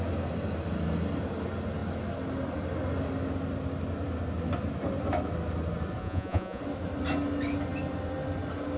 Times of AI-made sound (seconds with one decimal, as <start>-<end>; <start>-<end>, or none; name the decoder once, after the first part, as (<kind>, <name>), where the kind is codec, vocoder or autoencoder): 6.0-6.6 (vocoder, Vocos)